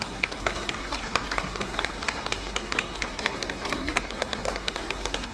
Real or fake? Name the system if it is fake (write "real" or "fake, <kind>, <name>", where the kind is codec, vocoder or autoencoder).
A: fake, codec, SNAC